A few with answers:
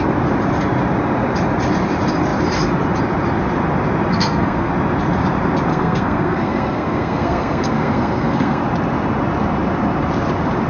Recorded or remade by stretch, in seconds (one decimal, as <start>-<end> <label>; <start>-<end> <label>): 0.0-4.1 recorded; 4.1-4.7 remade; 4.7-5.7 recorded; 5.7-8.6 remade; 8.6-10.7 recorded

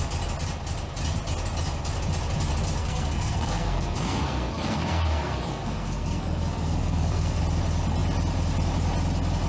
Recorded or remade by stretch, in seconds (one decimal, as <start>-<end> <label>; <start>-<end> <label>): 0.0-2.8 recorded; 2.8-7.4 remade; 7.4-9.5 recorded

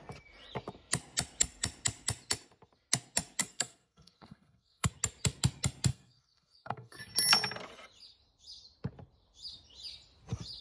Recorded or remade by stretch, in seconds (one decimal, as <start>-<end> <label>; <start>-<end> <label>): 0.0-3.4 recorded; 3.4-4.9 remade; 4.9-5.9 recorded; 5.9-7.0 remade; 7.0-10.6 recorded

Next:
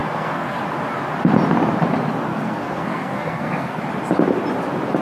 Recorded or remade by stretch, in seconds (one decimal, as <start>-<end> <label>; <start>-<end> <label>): 0.0-0.6 remade; 0.6-2.3 recorded; 2.3-3.8 remade; 3.8-5.0 recorded

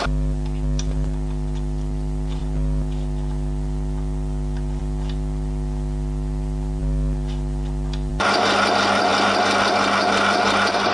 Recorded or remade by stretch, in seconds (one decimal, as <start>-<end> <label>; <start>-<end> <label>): 0.0-10.9 recorded